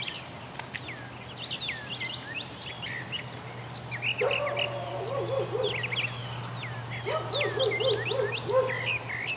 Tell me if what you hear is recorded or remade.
recorded